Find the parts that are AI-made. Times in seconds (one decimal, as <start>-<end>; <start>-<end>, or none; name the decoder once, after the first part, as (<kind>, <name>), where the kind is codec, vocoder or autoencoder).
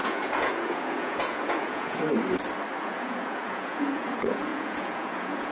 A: 0.0-2.0 (vocoder, Vocos); 2.8-5.5